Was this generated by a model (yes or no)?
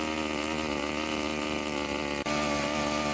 no